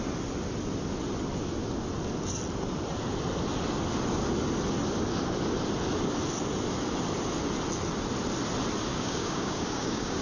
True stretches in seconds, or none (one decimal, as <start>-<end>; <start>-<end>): 0.0-8.9